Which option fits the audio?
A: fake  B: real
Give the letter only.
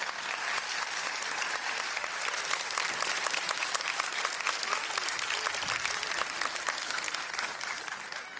B